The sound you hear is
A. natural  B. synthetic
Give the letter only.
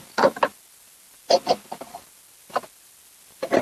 A